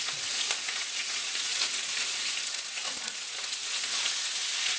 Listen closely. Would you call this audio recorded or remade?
remade